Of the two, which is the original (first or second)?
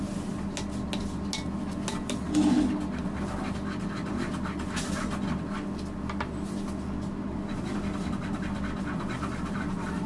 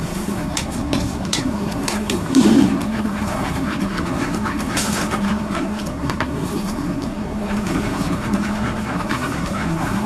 first